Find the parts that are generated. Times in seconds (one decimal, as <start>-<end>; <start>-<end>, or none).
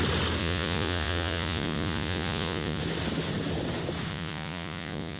0.4-2.8; 4.1-5.2